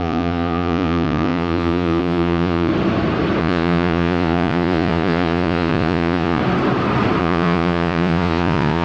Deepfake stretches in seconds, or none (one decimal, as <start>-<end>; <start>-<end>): 0.0-2.7; 3.4-6.4; 7.2-8.8